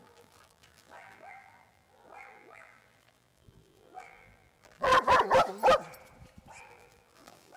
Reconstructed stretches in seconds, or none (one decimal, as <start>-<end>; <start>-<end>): 0.0-4.9; 6.6-7.6